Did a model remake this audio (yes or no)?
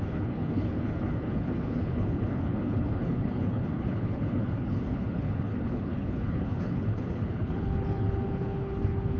yes